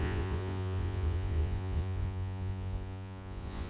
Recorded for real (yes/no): no